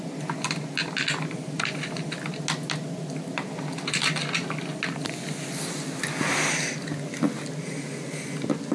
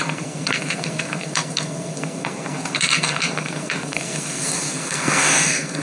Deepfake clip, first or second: second